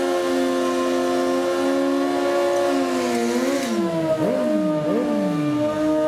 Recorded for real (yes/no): yes